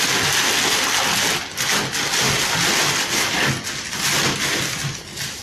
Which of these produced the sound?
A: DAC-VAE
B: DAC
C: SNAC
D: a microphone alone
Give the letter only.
D